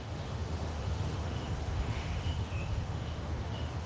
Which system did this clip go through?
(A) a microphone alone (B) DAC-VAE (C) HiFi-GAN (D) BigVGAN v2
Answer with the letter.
B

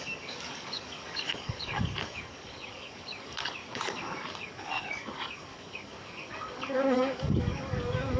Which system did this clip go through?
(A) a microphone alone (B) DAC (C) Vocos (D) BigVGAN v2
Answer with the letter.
B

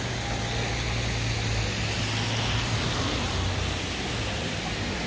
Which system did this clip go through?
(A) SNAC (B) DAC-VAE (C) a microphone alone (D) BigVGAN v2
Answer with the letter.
C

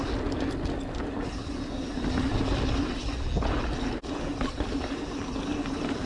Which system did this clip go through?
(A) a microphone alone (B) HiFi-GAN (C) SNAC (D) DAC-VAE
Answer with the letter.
A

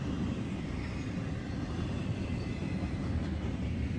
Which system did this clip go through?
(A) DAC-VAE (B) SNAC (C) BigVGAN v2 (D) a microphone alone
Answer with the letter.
D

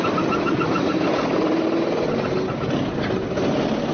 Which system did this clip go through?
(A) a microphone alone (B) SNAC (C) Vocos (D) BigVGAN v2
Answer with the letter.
A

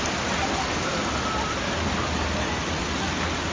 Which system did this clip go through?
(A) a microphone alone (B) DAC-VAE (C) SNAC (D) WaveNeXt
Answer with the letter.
A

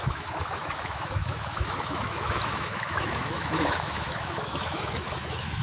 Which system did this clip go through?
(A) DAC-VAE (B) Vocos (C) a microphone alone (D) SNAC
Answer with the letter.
A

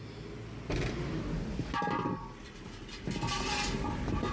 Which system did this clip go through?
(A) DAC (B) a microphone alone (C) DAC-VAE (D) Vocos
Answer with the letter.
B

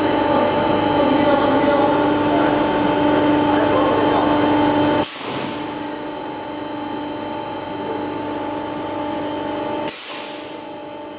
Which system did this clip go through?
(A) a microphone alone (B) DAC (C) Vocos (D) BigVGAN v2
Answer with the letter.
A